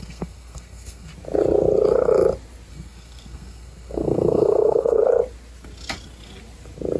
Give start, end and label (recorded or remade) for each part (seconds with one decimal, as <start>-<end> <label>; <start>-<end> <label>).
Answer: 0.0-1.1 remade; 1.1-2.7 recorded; 2.7-5.0 remade; 5.0-7.0 recorded